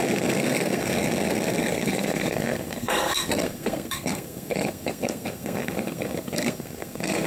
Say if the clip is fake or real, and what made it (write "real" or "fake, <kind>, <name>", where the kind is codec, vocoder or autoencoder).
fake, codec, SNAC